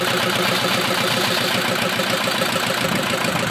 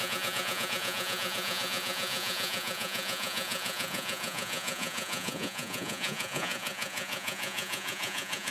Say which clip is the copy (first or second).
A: second